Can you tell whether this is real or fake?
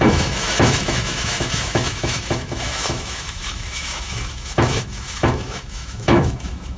fake